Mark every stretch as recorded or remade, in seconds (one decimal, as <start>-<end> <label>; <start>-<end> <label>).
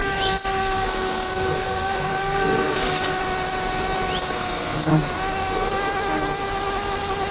0.0-3.2 remade; 3.2-4.2 recorded; 4.2-4.9 remade; 4.9-7.3 recorded